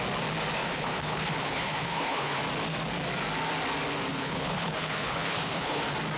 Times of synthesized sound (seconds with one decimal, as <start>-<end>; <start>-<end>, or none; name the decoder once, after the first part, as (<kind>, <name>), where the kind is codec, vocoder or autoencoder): 0.6-2.4 (codec, HILCodec); 4.1-5.8